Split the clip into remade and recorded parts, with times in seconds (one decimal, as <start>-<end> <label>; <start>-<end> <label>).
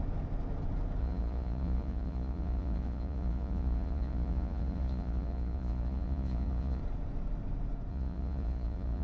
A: 0.0-1.0 recorded; 1.0-6.8 remade; 6.8-7.9 recorded; 7.9-9.0 remade